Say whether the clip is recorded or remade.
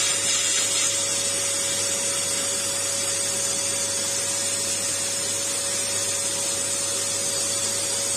recorded